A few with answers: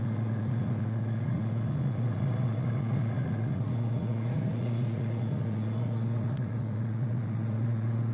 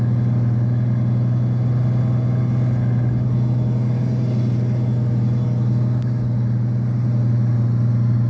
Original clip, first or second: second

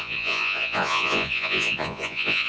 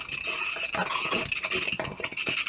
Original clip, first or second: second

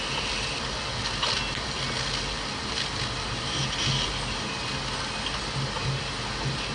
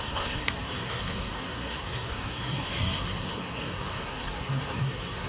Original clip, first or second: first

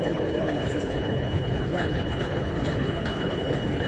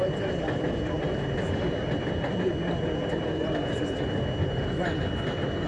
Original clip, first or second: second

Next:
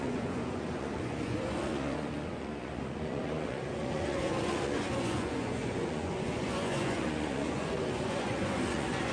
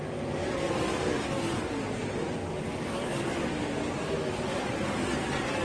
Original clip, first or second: second